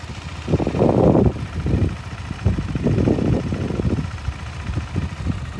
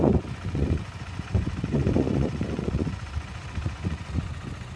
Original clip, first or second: first